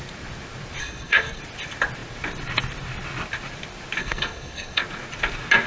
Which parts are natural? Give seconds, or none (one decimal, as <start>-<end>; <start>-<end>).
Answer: 0.0-0.8; 1.4-4.0; 4.8-5.7